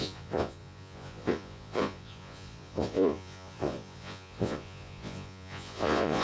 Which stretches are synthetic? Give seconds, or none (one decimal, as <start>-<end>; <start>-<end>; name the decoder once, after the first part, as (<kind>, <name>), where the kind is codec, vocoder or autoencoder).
0.0-6.2 (vocoder, Vocos)